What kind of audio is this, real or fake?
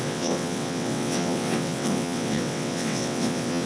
fake